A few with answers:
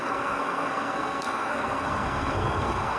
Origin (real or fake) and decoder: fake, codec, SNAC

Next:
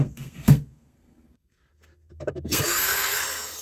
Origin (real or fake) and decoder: fake, codec, SNAC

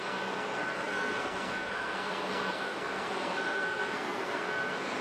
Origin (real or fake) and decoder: fake, codec, SNAC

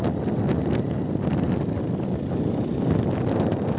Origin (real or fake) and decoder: real